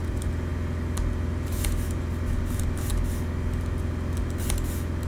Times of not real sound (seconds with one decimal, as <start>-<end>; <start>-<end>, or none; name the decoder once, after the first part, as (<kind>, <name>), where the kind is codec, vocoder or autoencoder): none